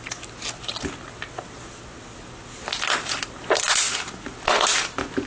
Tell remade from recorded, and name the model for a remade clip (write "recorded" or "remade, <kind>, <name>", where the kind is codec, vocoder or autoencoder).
recorded